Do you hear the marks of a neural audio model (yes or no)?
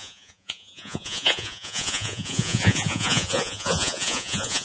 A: yes